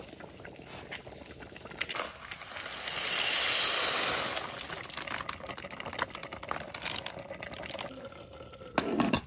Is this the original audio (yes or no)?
yes